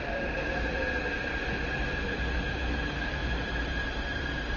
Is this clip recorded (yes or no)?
no